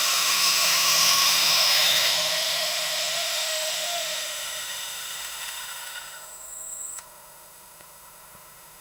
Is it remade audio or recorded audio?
remade